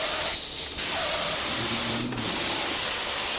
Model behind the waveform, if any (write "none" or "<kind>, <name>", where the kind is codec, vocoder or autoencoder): none